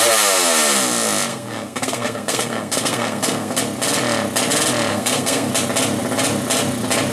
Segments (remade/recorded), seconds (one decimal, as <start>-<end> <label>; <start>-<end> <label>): 0.0-1.3 recorded; 1.3-3.6 remade; 3.6-4.9 recorded; 4.9-5.5 remade; 5.5-7.1 recorded